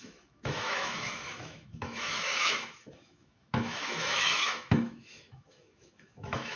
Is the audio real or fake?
fake